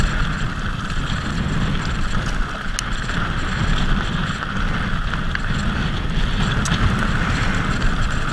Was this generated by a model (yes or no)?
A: no